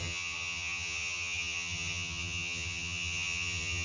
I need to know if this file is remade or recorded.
remade